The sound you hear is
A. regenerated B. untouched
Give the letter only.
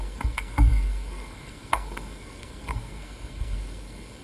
A